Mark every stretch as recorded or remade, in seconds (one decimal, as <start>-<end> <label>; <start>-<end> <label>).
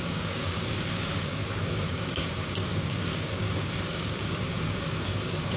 0.0-5.6 remade